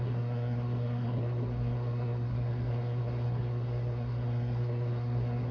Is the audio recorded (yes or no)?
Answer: no